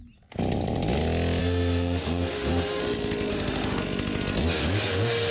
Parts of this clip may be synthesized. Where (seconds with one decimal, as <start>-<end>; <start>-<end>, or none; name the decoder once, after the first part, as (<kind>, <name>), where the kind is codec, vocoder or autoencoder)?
1.4-2.8 (autoencoder, DAC-VAE); 3.3-3.8; 4.6-5.3